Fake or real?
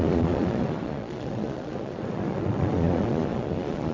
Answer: fake